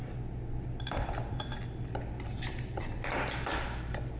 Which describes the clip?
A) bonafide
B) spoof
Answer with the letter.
A